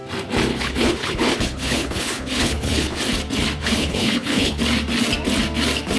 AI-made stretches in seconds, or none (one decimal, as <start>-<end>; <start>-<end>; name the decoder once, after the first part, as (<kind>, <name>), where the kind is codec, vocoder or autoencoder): 0.5-3.0 (codec, HILCodec); 3.6-4.6